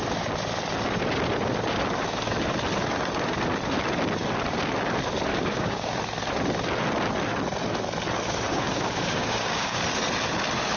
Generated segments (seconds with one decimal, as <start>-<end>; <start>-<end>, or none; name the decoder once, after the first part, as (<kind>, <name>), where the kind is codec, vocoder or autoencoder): 5.3-6.0 (codec, DAC); 8.5-9.8